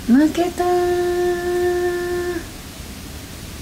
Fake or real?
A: real